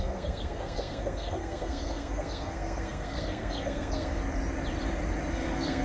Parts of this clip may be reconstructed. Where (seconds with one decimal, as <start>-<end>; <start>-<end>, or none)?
0.0-4.2; 5.3-5.8

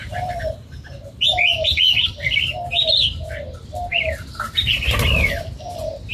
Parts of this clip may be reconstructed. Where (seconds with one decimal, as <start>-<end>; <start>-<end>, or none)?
0.0-2.7; 3.9-5.4

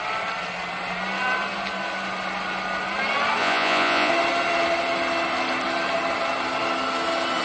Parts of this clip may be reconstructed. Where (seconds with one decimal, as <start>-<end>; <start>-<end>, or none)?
3.4-4.1

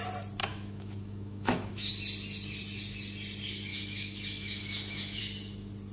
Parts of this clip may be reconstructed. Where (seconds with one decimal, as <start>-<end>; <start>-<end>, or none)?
0.4-1.9; 3.7-5.2